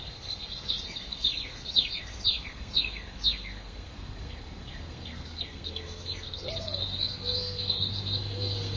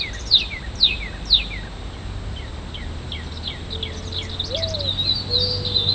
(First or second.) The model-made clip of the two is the first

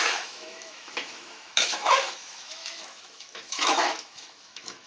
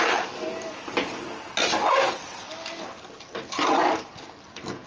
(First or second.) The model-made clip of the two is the first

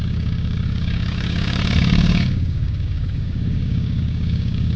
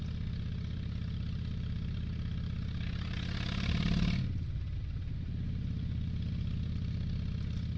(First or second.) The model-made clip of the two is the first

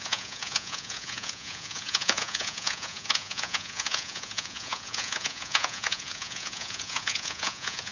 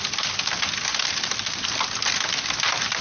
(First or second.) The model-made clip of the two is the first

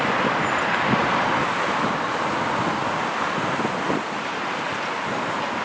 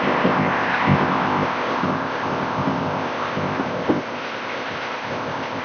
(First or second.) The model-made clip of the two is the second